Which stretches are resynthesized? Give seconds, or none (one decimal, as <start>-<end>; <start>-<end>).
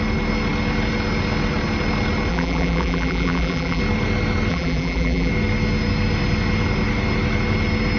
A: 2.3-3.8; 4.5-5.3